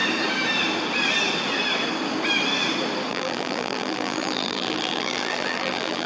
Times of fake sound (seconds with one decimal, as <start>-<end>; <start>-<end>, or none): 3.1-6.1